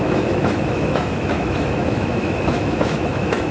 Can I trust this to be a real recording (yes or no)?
no